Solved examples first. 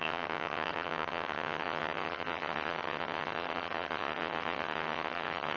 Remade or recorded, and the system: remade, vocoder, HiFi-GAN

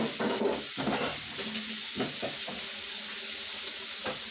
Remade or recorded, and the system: recorded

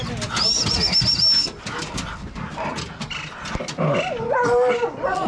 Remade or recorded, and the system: recorded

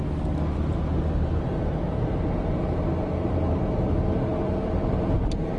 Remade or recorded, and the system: recorded